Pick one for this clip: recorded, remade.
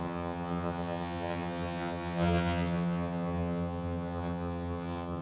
remade